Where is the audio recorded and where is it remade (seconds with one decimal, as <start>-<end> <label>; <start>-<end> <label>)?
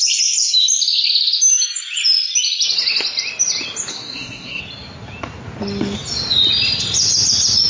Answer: 0.0-3.9 recorded; 3.9-4.6 remade; 4.6-7.7 recorded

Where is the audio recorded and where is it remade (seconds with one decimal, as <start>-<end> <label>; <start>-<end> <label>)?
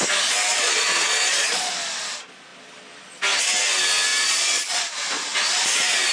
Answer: 0.0-0.5 recorded; 0.5-1.7 remade; 1.7-4.1 recorded; 4.1-4.8 remade; 4.8-6.1 recorded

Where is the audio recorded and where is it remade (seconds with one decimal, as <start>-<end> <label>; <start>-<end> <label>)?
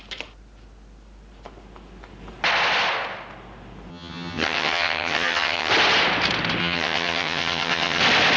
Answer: 0.0-3.9 recorded; 3.9-5.7 remade; 5.7-6.6 recorded; 6.6-8.0 remade; 8.0-8.4 recorded